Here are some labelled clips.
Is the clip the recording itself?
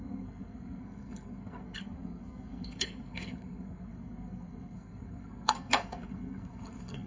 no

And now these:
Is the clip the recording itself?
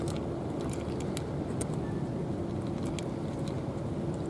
yes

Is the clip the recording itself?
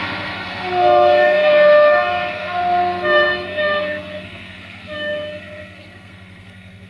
no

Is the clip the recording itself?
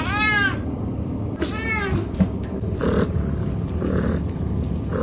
yes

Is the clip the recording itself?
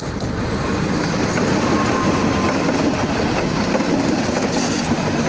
yes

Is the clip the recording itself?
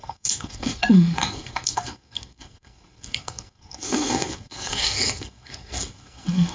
no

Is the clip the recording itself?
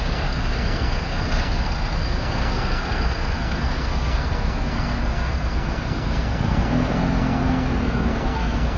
no